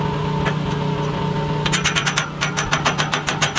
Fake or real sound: real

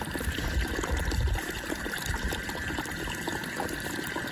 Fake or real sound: real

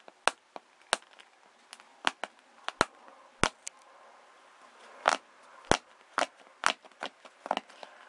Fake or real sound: real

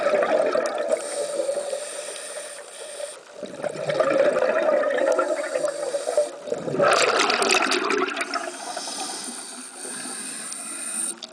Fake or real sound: real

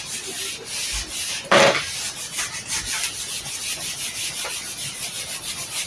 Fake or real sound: real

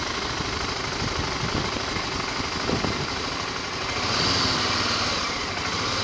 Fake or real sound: real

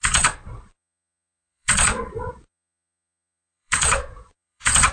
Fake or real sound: fake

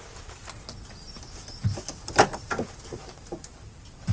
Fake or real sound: real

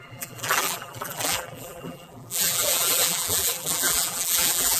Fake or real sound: fake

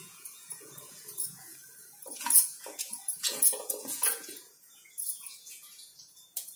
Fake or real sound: fake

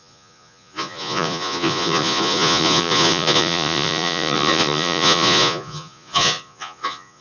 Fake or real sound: fake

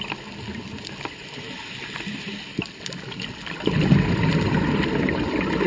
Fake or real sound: real